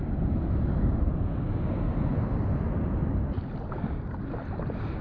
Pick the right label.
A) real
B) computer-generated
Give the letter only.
A